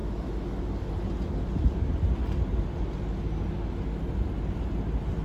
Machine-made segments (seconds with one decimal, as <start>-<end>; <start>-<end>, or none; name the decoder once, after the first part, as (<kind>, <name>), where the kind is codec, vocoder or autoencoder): none